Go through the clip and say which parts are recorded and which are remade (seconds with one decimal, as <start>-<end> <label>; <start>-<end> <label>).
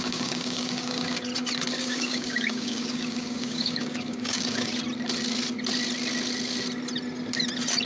0.0-1.3 remade; 1.3-1.8 recorded; 1.8-4.7 remade; 4.7-7.9 recorded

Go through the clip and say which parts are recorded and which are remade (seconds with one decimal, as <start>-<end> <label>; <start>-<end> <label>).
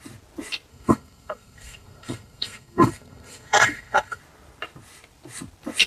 0.0-0.7 recorded; 0.7-4.2 remade; 4.2-5.9 recorded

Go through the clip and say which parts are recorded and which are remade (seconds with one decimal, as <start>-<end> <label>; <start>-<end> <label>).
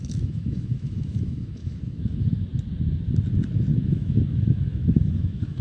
0.0-2.5 remade; 2.5-3.7 recorded; 3.7-5.6 remade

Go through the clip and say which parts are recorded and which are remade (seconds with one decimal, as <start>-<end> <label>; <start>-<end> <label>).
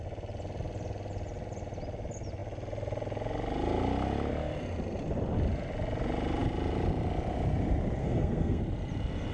0.0-8.0 recorded; 8.0-8.6 remade; 8.6-9.3 recorded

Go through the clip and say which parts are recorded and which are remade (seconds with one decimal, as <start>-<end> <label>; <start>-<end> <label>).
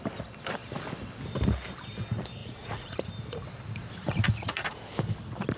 0.0-2.4 recorded; 2.4-3.1 remade; 3.1-4.0 recorded; 4.0-4.7 remade; 4.7-5.6 recorded